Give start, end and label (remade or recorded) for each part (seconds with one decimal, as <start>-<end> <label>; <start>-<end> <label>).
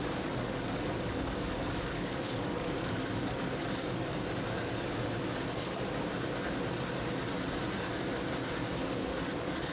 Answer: 0.0-4.1 remade; 4.1-8.9 recorded; 8.9-9.7 remade